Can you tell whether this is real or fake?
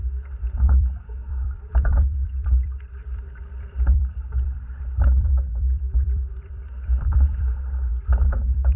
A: fake